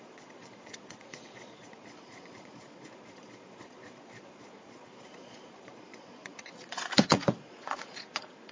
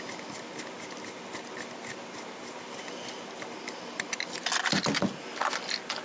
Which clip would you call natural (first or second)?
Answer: second